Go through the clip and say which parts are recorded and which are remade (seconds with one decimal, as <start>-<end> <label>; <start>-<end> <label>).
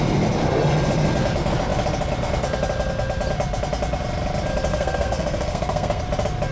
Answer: 0.0-4.7 recorded; 4.7-6.0 remade; 6.0-6.5 recorded